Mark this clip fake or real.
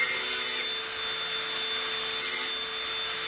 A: real